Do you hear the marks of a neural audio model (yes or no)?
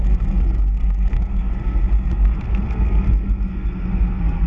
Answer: yes